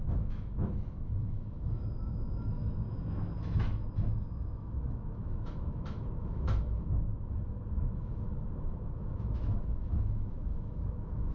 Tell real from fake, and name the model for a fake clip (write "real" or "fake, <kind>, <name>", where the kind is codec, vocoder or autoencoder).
fake, autoencoder, DAC-VAE